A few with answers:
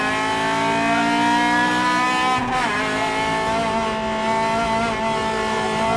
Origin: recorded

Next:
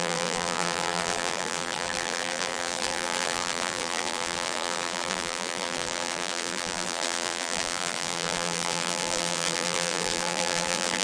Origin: remade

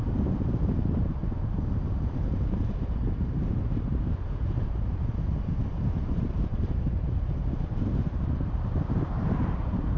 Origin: remade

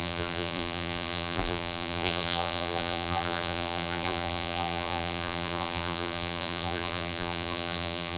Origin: remade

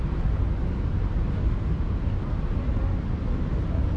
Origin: recorded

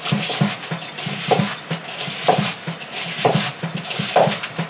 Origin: recorded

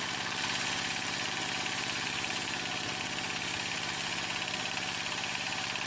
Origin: remade